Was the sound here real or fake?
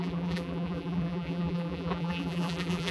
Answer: fake